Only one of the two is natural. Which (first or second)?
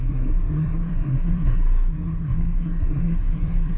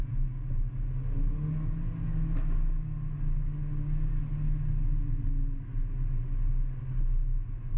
second